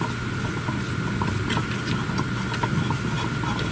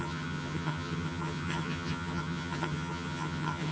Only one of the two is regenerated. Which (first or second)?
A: second